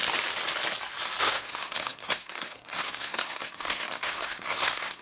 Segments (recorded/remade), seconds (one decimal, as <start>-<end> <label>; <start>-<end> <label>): 0.0-1.2 recorded; 1.2-5.0 remade